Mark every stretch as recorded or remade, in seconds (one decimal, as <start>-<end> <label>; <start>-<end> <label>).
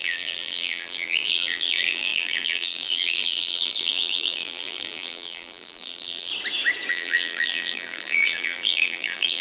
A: 0.0-6.3 remade; 6.3-6.9 recorded; 6.9-9.4 remade